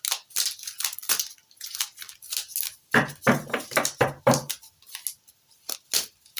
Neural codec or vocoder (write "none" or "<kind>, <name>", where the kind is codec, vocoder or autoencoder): none